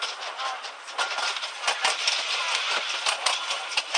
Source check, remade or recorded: recorded